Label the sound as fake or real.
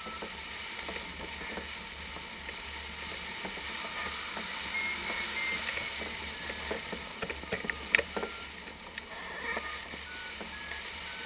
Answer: real